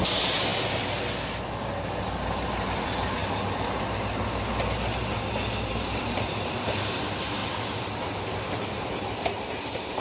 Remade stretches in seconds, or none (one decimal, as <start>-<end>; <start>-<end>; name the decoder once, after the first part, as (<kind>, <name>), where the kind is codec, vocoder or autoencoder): 0.0-0.5 (vocoder, BigVGAN v2); 2.0-3.2; 5.7-10.0